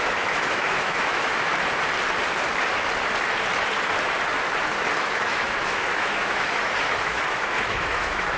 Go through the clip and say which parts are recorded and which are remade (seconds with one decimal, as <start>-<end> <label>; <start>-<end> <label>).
0.0-1.5 remade; 1.5-5.0 recorded; 5.0-8.4 remade